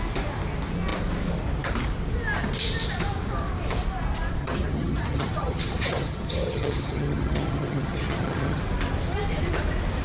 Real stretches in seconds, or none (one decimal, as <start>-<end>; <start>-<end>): 0.0-4.4; 8.6-10.0